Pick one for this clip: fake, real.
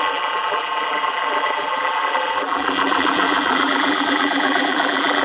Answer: fake